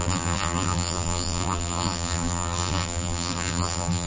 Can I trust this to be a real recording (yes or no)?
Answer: no